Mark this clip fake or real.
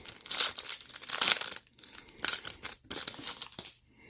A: real